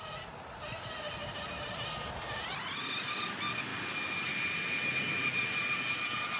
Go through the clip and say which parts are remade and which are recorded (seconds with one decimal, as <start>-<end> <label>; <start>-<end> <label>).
0.0-6.4 recorded